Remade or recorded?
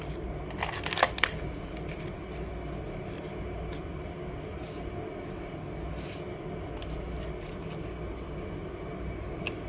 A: recorded